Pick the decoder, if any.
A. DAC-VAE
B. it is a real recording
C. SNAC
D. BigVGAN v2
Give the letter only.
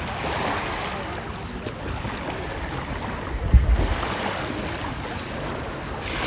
B